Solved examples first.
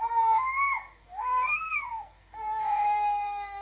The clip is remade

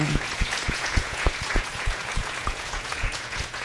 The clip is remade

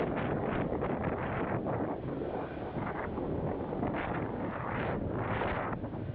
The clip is recorded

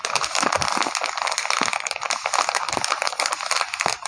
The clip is recorded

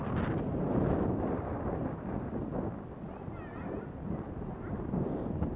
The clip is recorded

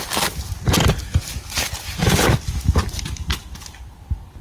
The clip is recorded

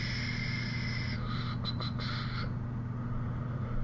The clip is recorded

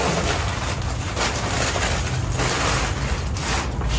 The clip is recorded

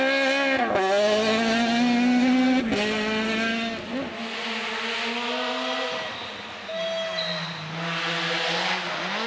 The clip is recorded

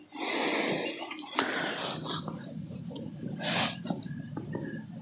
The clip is recorded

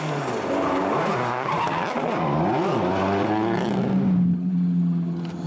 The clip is recorded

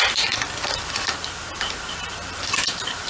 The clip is remade